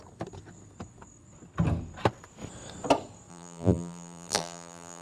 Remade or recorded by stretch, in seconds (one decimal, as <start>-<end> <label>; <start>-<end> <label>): 0.0-3.3 recorded; 3.3-5.0 remade